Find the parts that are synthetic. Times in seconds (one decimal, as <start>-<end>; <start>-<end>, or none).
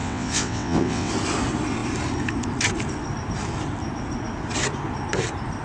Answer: 0.0-1.1